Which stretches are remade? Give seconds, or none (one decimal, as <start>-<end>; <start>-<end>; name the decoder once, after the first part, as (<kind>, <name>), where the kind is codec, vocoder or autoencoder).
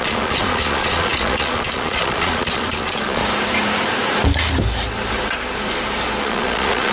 0.0-3.2 (vocoder, Vocos); 6.2-6.9